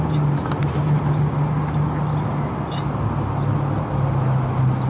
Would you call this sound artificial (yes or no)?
no